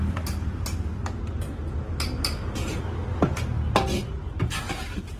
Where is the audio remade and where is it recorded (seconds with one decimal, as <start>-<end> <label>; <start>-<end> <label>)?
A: 0.0-0.9 remade; 0.9-4.0 recorded; 4.0-5.2 remade

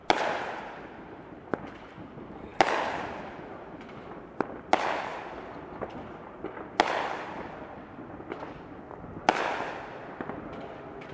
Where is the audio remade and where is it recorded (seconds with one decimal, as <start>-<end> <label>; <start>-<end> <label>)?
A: 0.0-11.1 recorded

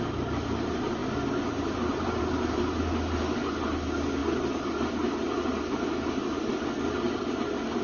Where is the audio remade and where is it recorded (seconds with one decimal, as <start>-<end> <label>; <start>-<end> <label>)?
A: 0.0-7.8 recorded

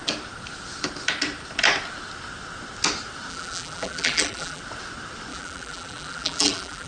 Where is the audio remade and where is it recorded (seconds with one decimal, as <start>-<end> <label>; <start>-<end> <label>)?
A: 0.0-3.3 recorded; 3.3-4.6 remade; 4.6-5.3 recorded; 5.3-6.9 remade